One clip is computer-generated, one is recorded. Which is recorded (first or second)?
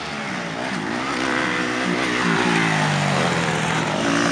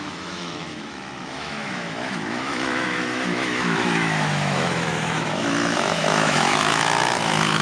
first